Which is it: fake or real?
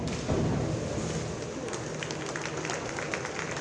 real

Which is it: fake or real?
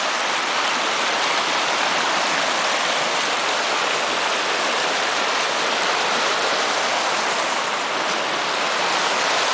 real